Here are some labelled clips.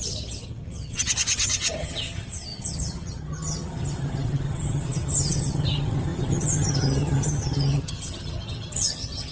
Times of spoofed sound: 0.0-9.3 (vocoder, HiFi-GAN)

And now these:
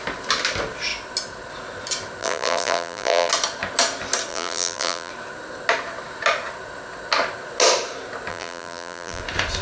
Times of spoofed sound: 2.2-3.3 (vocoder, BigVGAN v2); 4.3-5.1; 8.3-9.2

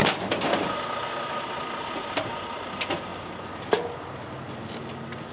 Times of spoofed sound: none